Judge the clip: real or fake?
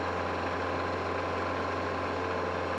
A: real